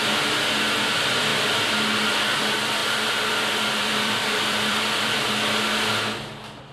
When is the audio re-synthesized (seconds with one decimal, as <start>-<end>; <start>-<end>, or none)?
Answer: 2.8-5.3